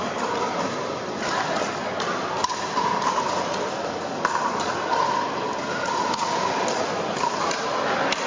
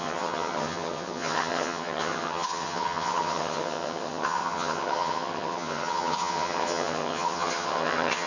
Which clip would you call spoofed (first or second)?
second